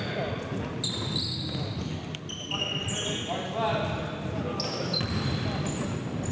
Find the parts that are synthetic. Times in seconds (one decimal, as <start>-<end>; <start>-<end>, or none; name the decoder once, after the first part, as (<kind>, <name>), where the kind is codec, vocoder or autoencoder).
none